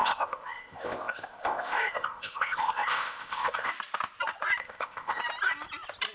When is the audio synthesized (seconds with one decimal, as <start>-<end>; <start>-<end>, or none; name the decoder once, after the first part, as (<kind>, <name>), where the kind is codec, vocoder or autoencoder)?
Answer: 0.0-3.7 (codec, ZipCodec); 4.6-5.2